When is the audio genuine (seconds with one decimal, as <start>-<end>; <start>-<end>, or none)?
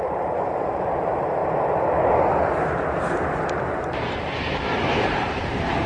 1.4-4.9